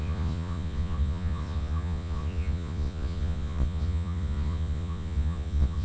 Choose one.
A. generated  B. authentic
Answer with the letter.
A